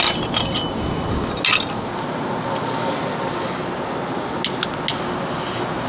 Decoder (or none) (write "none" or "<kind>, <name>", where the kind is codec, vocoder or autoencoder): none